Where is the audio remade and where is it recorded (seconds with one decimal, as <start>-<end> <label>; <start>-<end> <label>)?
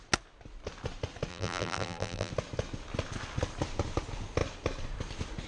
0.0-1.3 recorded; 1.3-2.3 remade; 2.3-5.5 recorded